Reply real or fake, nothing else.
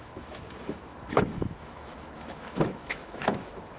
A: fake